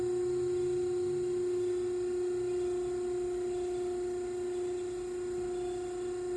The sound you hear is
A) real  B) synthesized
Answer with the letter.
A